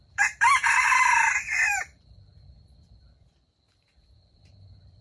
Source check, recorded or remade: remade